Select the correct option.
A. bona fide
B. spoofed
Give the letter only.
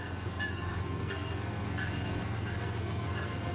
B